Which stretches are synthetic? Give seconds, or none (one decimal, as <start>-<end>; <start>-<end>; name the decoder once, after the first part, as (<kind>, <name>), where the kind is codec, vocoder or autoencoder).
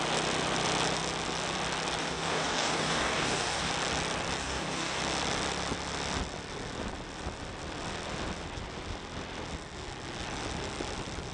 2.0-3.7 (codec, DAC); 4.4-5.0